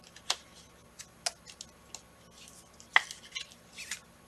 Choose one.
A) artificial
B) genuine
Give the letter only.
B